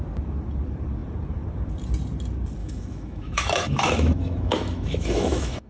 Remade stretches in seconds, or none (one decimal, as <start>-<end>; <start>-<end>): 2.6-5.7